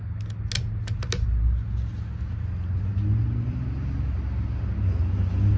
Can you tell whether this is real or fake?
real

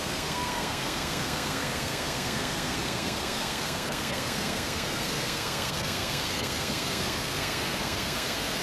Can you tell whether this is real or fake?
fake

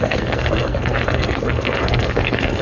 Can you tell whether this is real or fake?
fake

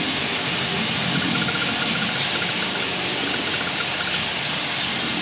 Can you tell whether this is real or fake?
real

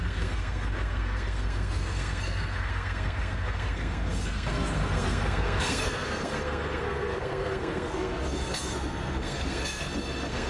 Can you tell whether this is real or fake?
fake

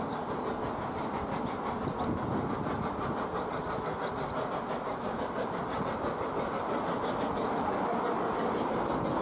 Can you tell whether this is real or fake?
real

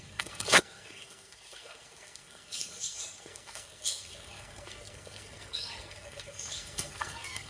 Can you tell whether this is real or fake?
fake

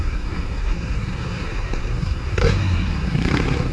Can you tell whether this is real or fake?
fake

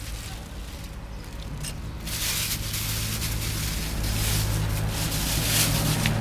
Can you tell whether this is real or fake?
real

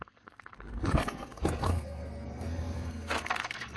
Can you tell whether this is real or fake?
fake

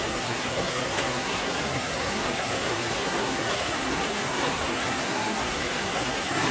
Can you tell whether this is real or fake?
fake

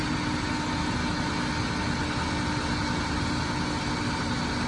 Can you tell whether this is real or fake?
real